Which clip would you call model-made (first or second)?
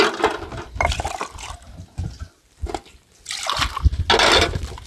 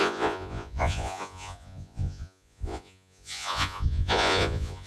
second